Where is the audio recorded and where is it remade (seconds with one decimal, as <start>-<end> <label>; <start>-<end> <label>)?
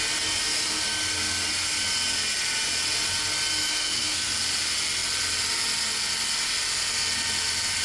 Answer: 0.0-3.6 recorded; 3.6-4.3 remade; 4.3-7.8 recorded